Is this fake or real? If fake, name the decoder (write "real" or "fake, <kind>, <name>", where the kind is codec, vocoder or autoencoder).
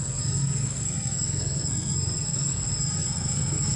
fake, codec, SNAC